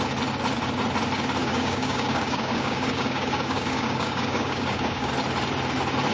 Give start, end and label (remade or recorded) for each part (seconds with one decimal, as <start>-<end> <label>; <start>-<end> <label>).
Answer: 0.0-1.4 recorded; 1.4-5.1 remade; 5.1-6.1 recorded